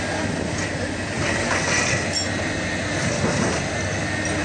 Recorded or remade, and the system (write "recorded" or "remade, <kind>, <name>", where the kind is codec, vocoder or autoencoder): recorded